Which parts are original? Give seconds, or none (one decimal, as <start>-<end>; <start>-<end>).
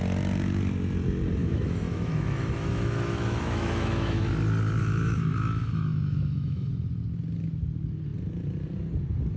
0.0-1.4; 4.3-4.8; 6.7-9.4